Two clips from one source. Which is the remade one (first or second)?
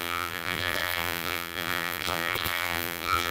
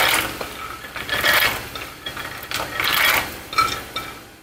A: first